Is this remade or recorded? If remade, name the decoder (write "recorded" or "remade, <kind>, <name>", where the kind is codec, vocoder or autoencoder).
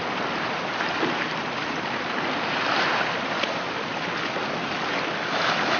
recorded